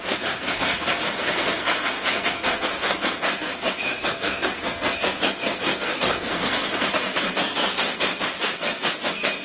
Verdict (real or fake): fake